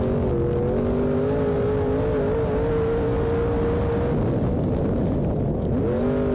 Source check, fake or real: real